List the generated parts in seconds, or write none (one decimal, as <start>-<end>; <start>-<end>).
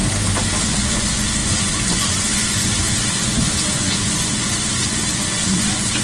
0.6-6.0